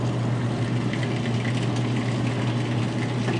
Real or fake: real